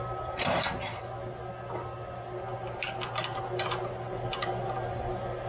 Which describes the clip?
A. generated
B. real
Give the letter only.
B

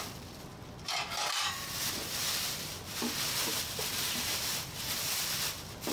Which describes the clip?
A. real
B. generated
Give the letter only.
A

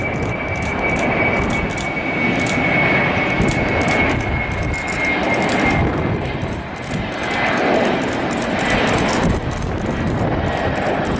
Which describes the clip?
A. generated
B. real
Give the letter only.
B